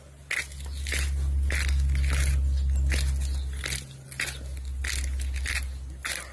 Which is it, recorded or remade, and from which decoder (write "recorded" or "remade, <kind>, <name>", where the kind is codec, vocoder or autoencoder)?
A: recorded